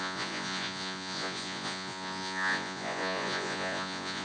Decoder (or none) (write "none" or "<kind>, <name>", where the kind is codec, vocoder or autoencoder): vocoder, Vocos